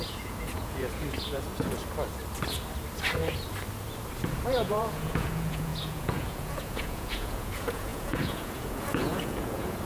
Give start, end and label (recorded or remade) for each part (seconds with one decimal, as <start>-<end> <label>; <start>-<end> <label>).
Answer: 0.0-1.5 remade; 1.5-4.5 recorded; 4.5-9.9 remade